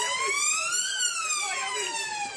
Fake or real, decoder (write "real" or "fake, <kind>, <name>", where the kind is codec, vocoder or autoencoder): real